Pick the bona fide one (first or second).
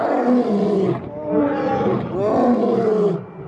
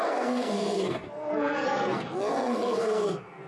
first